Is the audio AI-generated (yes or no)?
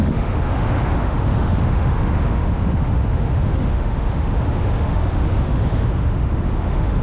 yes